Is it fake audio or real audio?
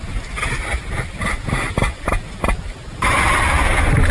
real